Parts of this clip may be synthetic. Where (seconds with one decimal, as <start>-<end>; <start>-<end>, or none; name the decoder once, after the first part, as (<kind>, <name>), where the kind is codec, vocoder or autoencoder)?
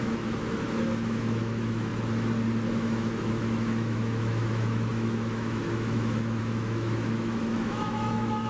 0.0-1.9 (autoencoder, DAC-VAE); 2.7-8.5